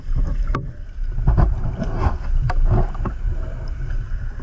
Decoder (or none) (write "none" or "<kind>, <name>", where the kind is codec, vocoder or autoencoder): none